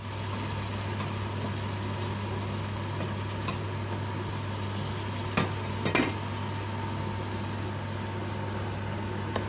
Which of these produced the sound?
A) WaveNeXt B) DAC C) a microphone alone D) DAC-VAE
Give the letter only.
C